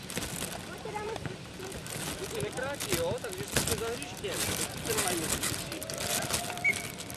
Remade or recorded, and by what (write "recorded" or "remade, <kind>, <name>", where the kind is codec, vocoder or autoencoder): recorded